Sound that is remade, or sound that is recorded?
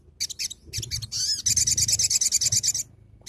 recorded